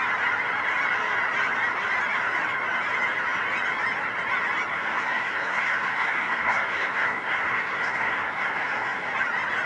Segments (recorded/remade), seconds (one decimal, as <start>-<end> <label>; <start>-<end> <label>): 0.0-4.7 recorded; 4.7-9.1 remade; 9.1-9.7 recorded